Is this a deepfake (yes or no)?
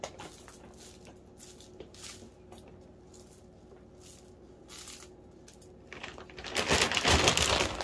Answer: no